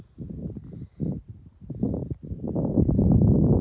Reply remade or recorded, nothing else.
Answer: recorded